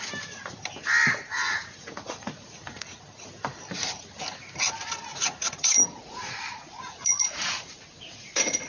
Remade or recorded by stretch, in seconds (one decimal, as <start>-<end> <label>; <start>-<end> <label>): 0.0-1.2 recorded; 1.2-3.0 remade; 3.0-5.1 recorded; 5.1-8.7 remade